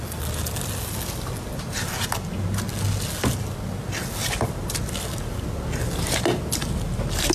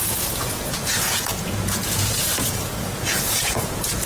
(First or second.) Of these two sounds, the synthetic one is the second